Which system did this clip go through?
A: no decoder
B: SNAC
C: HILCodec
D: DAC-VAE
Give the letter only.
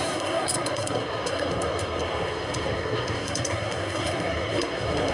B